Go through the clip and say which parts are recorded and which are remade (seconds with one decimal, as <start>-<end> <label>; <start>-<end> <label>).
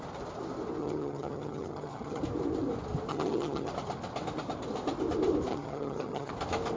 0.0-0.8 recorded; 0.8-2.2 remade; 2.2-3.1 recorded; 3.1-3.7 remade; 3.7-5.5 recorded; 5.5-6.3 remade; 6.3-6.8 recorded